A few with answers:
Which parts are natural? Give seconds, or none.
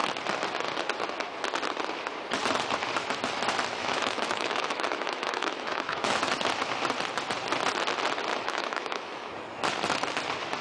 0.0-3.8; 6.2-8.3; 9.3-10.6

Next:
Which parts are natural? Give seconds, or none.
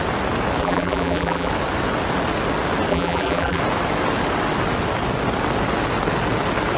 0.0-0.6; 1.5-2.9; 3.6-6.8